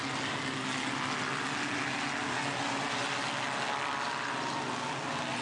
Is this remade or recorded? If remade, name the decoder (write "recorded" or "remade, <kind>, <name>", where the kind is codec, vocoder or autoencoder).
recorded